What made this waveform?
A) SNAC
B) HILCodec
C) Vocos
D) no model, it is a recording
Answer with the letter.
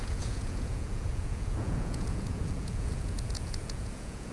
C